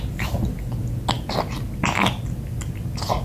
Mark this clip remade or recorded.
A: recorded